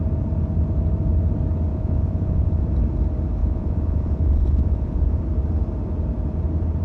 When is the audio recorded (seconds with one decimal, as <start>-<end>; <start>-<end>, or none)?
0.0-1.7; 2.6-3.4; 5.2-6.8